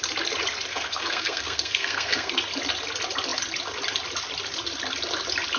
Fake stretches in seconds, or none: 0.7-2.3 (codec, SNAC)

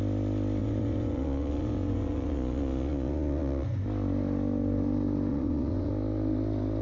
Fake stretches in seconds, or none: 0.6-3.8 (vocoder, Vocos); 5.3-5.9

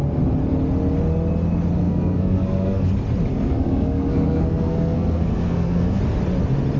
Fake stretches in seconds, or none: 1.8-2.9 (codec, SNAC); 3.3-6.0

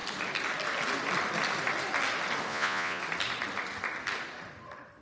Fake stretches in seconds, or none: 2.5-3.0 (vocoder, Vocos)

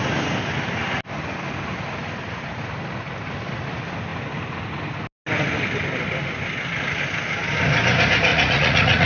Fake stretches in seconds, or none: 8.3-9.1 (vocoder, Vocos)

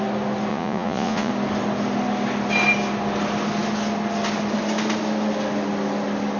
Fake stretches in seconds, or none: 0.5-1.3 (vocoder, Vocos)

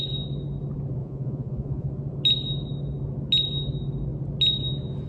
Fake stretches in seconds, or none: 1.0-1.9 (vocoder, Vocos)

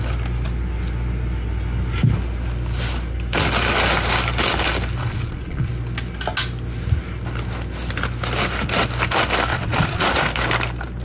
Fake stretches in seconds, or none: 5.0-5.7 (vocoder, Vocos); 9.5-10.2